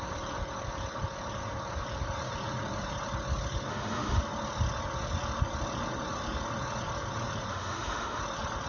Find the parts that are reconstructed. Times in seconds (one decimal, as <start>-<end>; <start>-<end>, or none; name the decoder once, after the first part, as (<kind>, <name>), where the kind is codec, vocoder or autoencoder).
3.7-4.2 (autoencoder, DAC-VAE); 7.5-8.2